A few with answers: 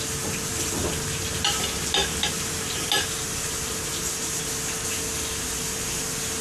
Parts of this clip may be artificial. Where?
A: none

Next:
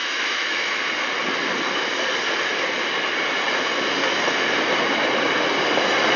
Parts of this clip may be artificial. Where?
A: 0.0-0.9

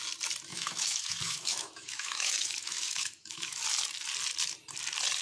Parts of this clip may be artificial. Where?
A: 0.5-3.6

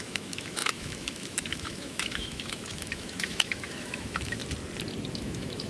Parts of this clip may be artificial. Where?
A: 0.0-4.4; 5.1-5.7

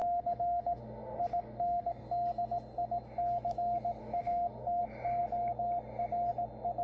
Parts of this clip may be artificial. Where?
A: 0.0-1.9; 4.0-4.8

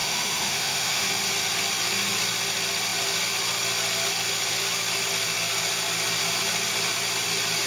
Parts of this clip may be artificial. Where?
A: 0.0-1.1

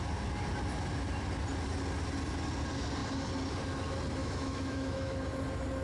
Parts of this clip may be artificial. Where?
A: 4.2-5.2

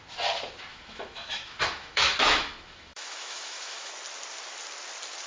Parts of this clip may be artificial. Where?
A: 0.7-3.9